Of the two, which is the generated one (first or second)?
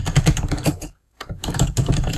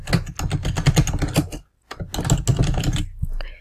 first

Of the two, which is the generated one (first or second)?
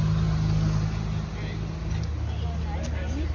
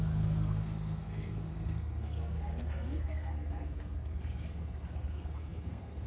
second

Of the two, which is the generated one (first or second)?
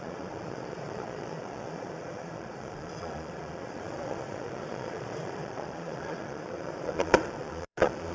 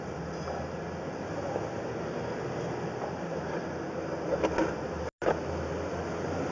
first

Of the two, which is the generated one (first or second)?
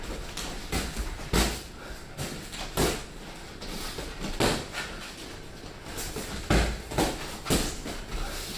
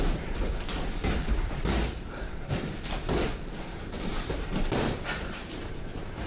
second